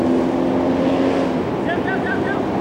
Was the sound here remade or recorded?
recorded